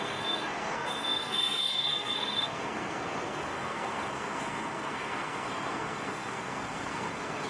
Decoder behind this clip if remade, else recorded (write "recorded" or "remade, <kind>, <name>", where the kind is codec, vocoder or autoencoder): remade, codec, SNAC